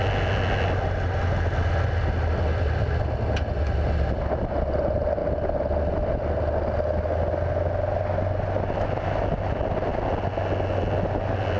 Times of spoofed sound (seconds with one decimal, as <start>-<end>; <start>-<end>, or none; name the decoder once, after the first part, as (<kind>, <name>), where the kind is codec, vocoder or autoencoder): 5.2-6.3 (vocoder, BigVGAN v2)